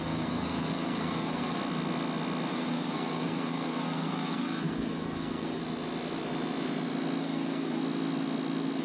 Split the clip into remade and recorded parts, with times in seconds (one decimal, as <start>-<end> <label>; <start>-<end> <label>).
0.0-1.6 remade; 1.6-2.5 recorded; 2.5-5.6 remade; 5.6-7.2 recorded; 7.2-7.8 remade; 7.8-8.8 recorded